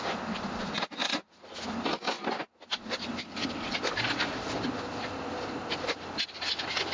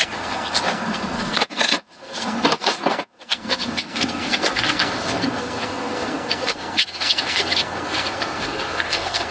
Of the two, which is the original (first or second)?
first